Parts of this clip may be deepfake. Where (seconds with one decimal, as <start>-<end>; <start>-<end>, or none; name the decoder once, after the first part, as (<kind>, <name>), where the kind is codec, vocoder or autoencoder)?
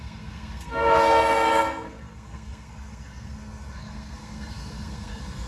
0.0-5.5 (codec, SNAC)